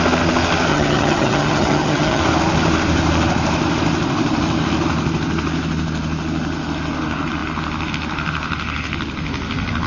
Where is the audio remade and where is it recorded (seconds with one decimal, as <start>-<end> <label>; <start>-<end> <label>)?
0.0-0.7 recorded; 0.7-2.2 remade; 2.2-9.9 recorded